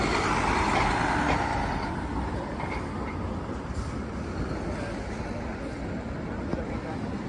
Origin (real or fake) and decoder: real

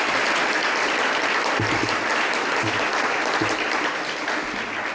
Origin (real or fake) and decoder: real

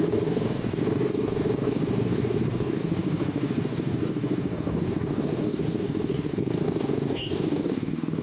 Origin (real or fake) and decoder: fake, codec, DAC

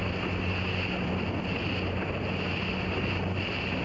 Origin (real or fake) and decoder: real